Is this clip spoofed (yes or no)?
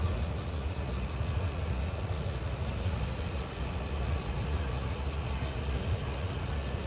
yes